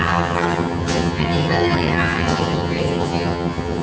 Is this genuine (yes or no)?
no